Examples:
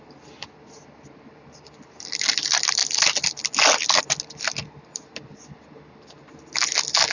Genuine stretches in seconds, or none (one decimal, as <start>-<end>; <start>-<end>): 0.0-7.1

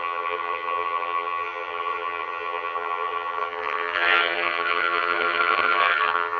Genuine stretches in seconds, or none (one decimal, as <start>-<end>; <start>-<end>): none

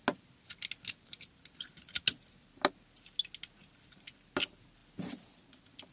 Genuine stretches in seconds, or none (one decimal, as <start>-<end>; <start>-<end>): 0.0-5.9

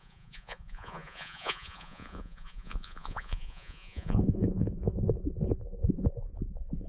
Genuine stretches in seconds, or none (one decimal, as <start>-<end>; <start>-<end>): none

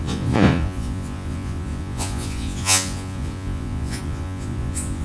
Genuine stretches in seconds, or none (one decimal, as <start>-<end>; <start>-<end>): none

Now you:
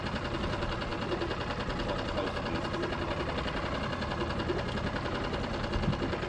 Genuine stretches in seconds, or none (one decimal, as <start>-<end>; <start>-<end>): 0.0-6.3

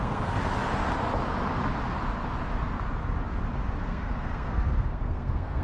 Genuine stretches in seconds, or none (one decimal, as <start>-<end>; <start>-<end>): 0.4-3.8